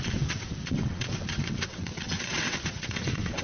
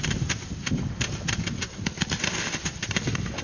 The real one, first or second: second